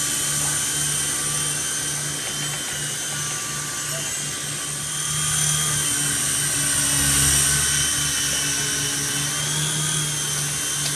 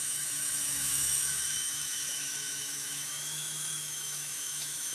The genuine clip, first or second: first